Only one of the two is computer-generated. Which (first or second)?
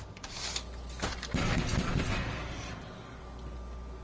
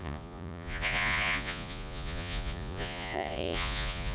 second